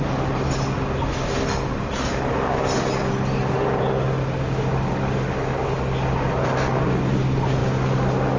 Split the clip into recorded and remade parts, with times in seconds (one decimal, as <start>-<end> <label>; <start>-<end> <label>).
0.0-8.4 recorded